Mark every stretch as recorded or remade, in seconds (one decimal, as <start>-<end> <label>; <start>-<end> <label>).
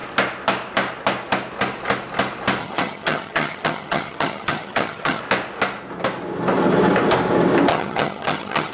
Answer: 0.0-2.6 recorded; 2.6-5.2 remade; 5.2-7.7 recorded; 7.7-8.7 remade